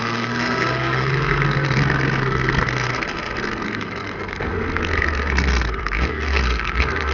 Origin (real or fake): fake